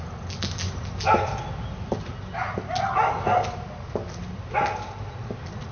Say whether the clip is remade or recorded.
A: recorded